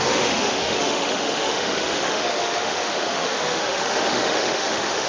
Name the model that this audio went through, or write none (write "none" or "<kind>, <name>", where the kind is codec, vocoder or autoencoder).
autoencoder, DAC-VAE